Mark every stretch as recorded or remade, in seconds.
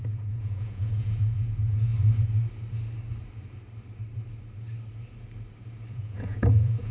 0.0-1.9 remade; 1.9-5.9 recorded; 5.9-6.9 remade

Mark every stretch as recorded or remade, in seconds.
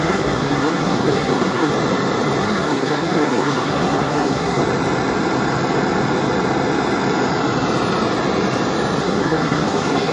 0.0-1.7 remade; 1.7-2.4 recorded; 2.4-4.6 remade; 4.6-9.0 recorded; 9.0-10.1 remade